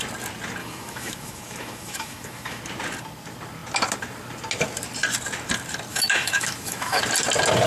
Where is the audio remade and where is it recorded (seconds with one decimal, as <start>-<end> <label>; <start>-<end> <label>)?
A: 0.0-0.6 recorded; 0.6-2.6 remade; 2.6-5.9 recorded; 5.9-7.0 remade; 7.0-7.7 recorded